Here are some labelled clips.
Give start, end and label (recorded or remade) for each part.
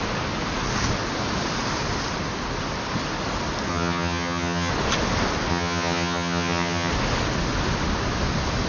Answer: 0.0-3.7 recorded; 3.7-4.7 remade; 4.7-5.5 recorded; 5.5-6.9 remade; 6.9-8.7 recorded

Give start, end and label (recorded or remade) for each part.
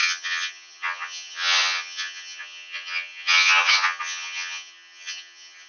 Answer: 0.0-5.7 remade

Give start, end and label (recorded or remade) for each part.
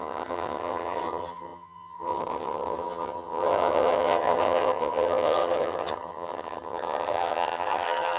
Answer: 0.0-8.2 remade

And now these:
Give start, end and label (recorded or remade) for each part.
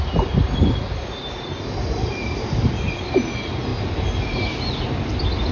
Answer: 0.0-5.5 recorded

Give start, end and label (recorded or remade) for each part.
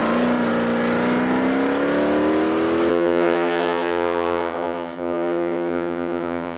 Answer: 0.0-2.9 recorded; 2.9-6.6 remade